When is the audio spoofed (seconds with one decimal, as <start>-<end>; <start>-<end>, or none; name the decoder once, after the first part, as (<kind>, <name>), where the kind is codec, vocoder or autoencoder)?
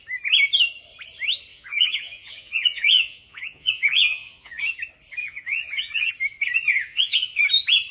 1.5-4.6 (vocoder, Vocos); 5.2-6.1; 6.7-7.4